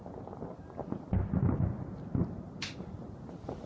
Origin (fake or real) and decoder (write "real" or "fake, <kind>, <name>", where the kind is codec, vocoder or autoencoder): real